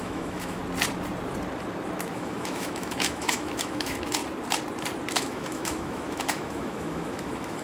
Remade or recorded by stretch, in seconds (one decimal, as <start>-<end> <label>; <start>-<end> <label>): 0.0-0.6 remade; 0.6-2.1 recorded; 2.1-4.2 remade; 4.2-5.1 recorded; 5.1-7.6 remade